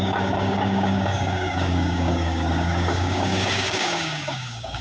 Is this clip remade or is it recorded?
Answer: remade